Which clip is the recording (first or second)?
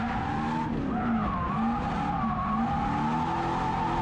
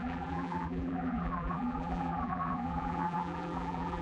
first